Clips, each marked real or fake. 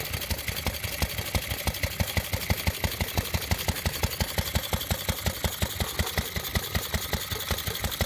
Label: real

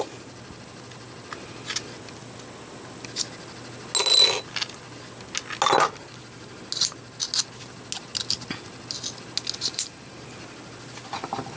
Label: real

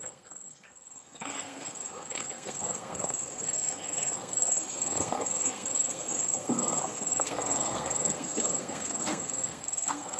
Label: fake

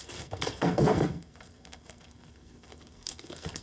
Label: fake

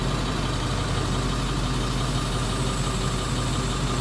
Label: real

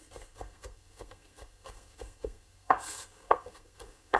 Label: fake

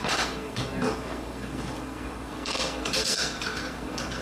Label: fake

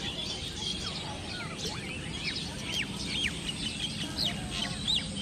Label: real